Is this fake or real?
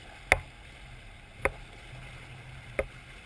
real